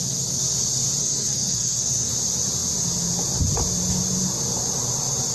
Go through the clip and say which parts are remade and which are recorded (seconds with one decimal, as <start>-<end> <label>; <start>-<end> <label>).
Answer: 0.0-1.0 recorded; 1.0-2.1 remade; 2.1-5.3 recorded